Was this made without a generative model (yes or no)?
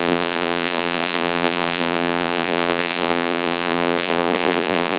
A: no